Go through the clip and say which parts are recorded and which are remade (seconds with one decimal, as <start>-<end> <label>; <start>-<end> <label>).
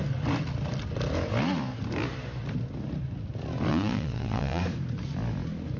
0.0-3.7 recorded; 3.7-4.6 remade; 4.6-5.8 recorded